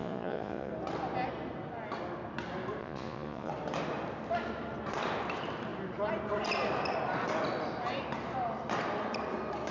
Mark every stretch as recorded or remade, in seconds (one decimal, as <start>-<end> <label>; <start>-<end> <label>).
0.0-0.7 remade; 0.7-2.8 recorded; 2.8-3.5 remade; 3.5-9.7 recorded